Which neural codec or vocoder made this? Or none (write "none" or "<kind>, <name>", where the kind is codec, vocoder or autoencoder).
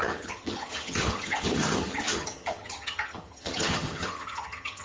vocoder, HiFi-GAN